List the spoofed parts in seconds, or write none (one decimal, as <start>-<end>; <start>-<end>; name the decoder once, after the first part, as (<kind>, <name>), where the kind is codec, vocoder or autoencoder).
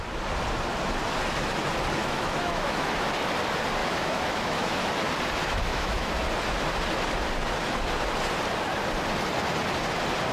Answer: 2.0-3.1 (autoencoder, DAC-VAE); 3.8-4.8; 5.4-6.1